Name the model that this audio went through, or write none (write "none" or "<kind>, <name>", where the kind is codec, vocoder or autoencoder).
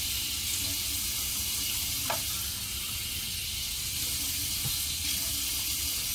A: none